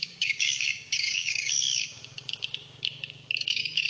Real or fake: fake